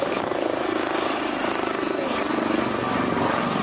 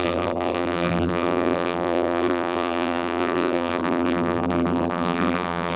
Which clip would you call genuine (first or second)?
first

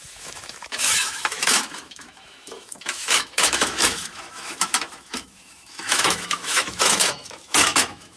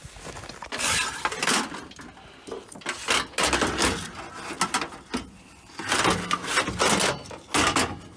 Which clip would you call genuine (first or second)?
second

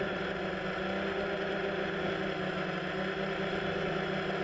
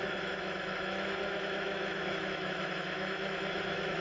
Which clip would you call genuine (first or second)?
first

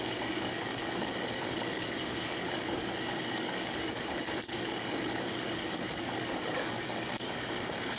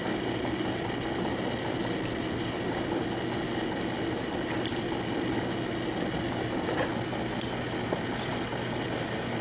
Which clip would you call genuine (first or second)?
second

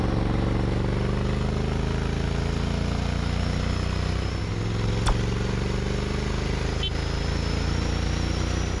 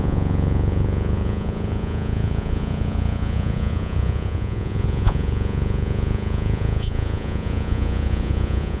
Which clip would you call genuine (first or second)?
first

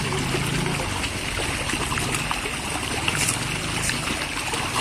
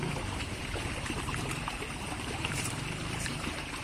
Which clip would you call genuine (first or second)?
first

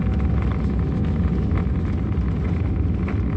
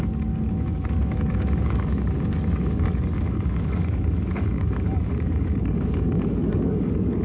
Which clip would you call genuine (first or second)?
first